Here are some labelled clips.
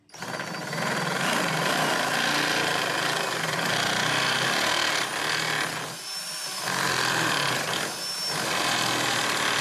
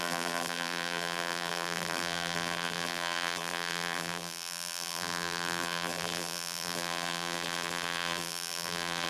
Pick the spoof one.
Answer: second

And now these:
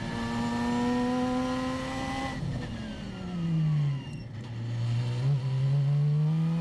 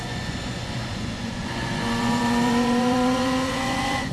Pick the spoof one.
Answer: second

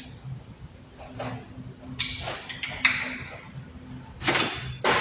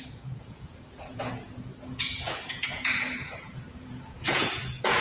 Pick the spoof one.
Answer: second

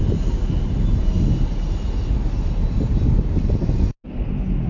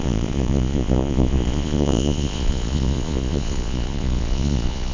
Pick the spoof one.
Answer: second